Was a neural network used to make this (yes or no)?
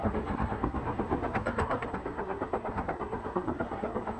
yes